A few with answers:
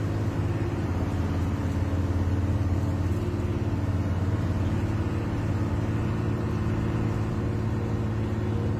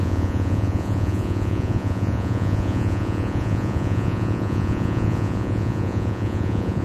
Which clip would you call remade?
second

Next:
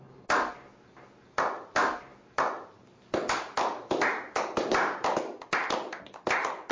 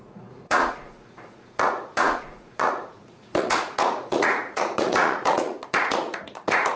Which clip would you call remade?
second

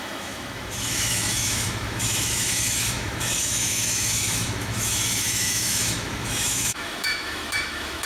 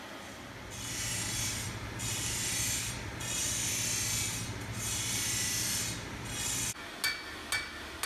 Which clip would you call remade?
first